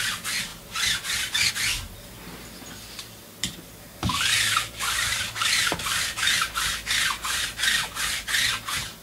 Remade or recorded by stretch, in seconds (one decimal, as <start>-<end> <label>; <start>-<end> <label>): 0.0-4.0 recorded; 4.0-6.7 remade; 6.7-9.0 recorded